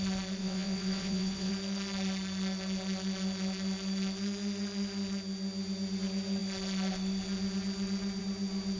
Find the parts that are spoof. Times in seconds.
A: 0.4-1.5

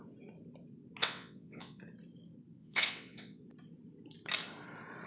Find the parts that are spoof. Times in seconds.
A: 1.0-1.8; 2.6-3.4